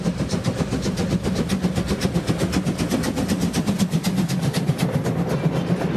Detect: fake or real real